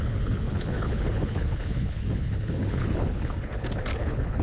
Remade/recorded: remade